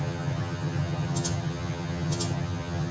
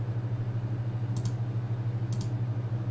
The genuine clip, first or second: second